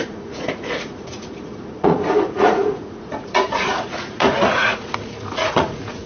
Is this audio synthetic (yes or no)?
yes